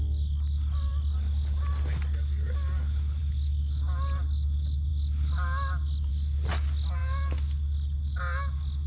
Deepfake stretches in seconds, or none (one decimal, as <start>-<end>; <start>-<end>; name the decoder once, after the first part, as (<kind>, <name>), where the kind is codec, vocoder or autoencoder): none